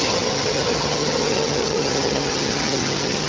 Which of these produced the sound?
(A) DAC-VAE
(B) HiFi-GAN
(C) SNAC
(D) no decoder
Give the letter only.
B